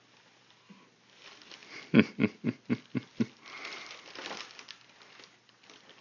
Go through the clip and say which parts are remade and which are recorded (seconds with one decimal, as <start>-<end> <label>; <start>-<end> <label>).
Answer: 0.0-6.0 recorded